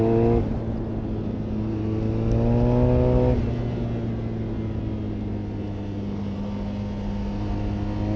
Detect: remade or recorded recorded